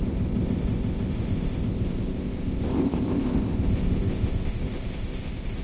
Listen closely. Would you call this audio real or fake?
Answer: fake